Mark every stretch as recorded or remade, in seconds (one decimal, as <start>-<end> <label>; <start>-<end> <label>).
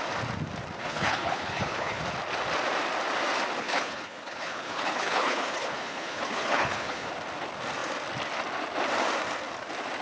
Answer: 0.0-0.8 recorded; 0.8-2.0 remade; 2.0-3.6 recorded; 3.6-7.1 remade; 7.1-10.0 recorded